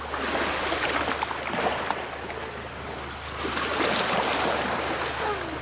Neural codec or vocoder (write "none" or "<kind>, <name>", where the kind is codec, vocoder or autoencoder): none